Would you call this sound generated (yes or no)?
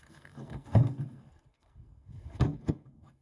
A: yes